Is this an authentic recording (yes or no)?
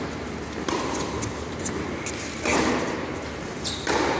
yes